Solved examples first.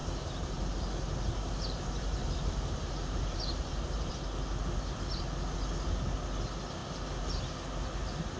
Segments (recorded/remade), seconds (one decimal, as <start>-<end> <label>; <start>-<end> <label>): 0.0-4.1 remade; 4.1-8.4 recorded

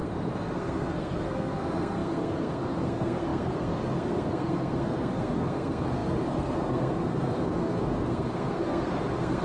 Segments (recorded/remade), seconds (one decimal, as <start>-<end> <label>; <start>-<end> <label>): 0.0-9.4 remade

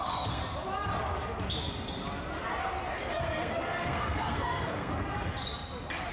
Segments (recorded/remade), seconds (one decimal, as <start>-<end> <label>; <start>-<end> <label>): 0.0-0.4 remade; 0.4-3.1 recorded; 3.1-4.9 remade; 4.9-6.1 recorded

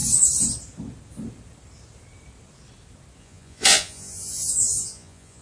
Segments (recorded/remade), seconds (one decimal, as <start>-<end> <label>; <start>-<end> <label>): 0.0-3.2 recorded; 3.2-5.4 remade